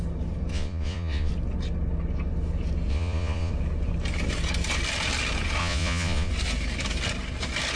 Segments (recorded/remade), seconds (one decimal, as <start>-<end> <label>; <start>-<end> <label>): 0.0-0.5 recorded; 0.5-1.3 remade; 1.3-2.9 recorded; 2.9-3.5 remade; 3.5-5.6 recorded; 5.6-6.3 remade; 6.3-7.8 recorded

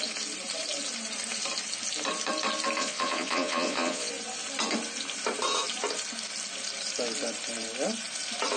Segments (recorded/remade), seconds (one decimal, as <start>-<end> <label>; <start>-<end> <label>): 0.0-2.8 recorded; 2.8-4.1 remade; 4.1-8.6 recorded

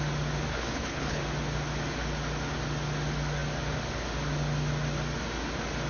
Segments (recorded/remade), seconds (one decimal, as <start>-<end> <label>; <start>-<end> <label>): 0.0-0.5 recorded; 0.5-1.2 remade; 1.2-5.9 recorded

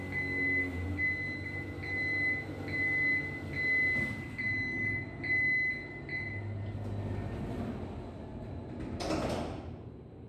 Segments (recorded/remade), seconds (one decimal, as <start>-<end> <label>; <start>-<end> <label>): 0.0-10.3 recorded

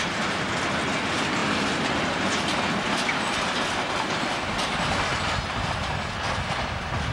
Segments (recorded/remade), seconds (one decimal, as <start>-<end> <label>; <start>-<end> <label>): 0.0-7.1 recorded

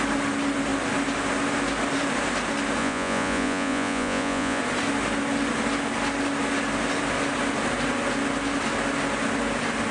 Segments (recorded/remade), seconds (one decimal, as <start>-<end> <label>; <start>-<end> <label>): 0.0-2.8 recorded; 2.8-4.6 remade; 4.6-9.9 recorded

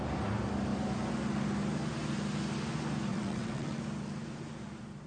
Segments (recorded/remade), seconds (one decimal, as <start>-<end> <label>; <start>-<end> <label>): 0.0-3.1 recorded; 3.1-3.8 remade; 3.8-5.1 recorded